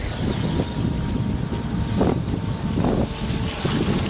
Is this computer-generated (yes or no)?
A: no